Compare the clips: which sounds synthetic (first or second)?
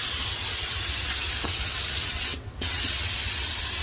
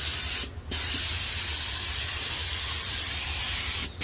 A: first